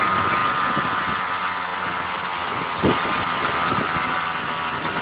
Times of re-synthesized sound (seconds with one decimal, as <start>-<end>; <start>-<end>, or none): none